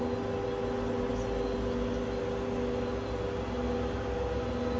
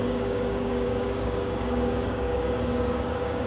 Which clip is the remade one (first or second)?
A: second